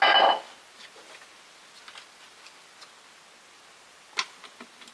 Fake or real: real